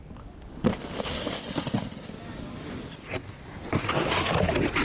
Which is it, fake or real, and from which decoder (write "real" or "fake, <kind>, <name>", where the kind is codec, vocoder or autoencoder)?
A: real